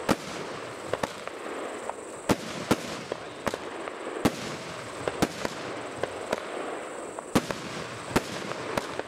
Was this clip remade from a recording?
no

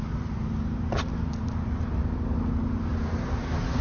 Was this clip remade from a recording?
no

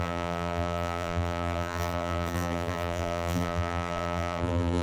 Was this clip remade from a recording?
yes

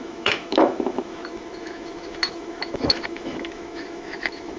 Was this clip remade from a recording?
yes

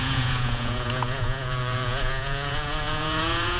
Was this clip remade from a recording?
yes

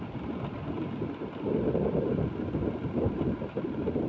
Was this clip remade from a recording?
no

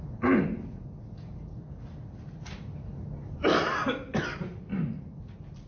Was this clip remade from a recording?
no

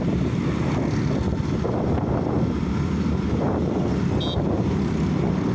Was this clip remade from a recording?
no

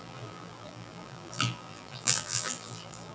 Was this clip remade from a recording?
yes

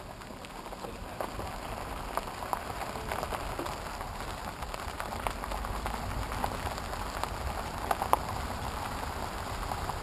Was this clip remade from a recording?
no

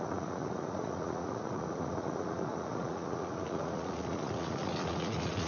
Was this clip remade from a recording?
yes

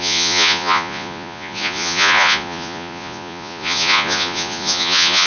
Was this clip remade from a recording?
yes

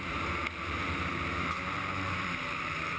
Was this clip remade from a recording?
yes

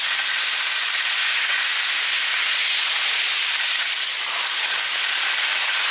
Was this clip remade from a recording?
no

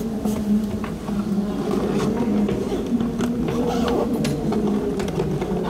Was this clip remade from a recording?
no